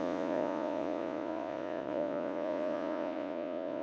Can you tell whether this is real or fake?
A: fake